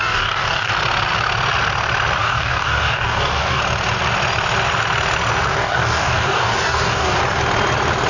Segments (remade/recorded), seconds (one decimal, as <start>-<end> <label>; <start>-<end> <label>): 0.0-0.7 remade; 0.7-2.2 recorded; 2.2-3.6 remade; 3.6-5.5 recorded; 5.5-7.2 remade; 7.2-8.1 recorded